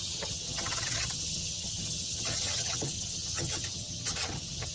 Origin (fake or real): fake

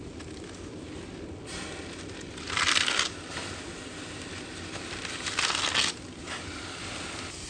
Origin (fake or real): real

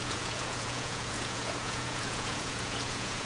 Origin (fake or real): fake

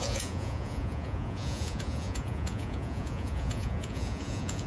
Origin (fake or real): fake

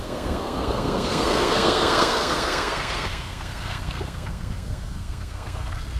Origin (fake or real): fake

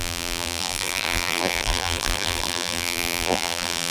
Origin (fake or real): fake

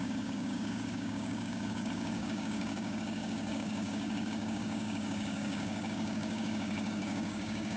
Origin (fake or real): fake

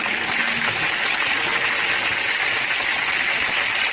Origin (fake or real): real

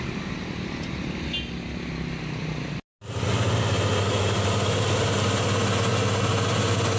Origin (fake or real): real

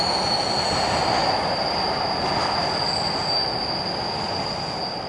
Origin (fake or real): real